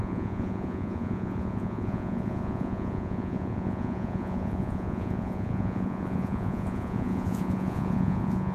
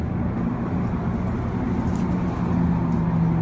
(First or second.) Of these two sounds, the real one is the second